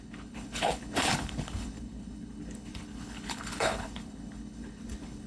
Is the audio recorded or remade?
remade